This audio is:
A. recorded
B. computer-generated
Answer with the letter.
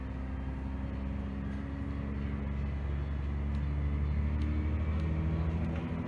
A